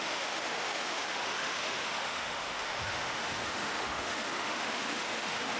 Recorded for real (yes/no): no